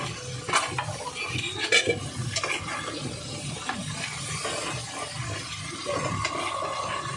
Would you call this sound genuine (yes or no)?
yes